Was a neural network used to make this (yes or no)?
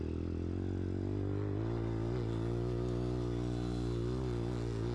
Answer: no